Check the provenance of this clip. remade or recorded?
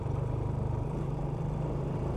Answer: remade